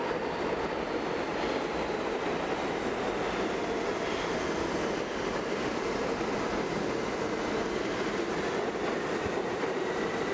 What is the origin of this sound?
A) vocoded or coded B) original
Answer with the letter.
B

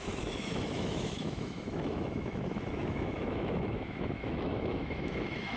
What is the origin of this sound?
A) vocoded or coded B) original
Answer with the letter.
A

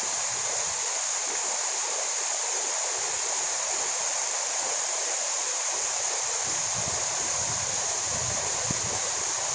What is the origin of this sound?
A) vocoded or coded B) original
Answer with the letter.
A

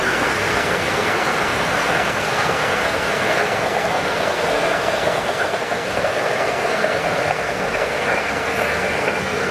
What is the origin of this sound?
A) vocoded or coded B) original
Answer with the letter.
A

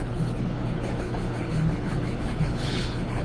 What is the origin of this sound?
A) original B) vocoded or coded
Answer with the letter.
B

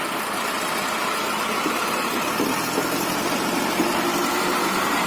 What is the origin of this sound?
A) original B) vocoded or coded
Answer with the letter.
A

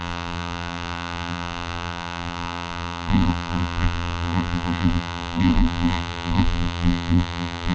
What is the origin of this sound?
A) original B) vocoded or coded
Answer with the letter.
B